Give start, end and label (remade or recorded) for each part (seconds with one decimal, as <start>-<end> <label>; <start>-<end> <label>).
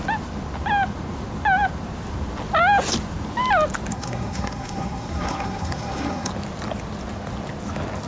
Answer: 0.0-3.9 recorded; 3.9-6.3 remade; 6.3-8.1 recorded